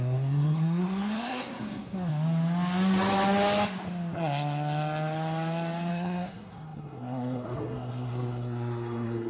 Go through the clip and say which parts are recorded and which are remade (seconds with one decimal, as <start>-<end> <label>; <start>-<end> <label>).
0.0-2.1 remade; 2.1-5.9 recorded; 5.9-9.3 remade